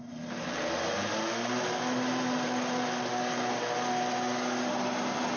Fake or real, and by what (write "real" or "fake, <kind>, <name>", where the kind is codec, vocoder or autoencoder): real